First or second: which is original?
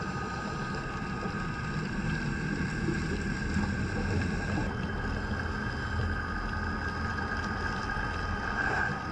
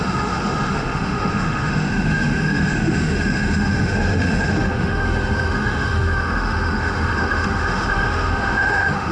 first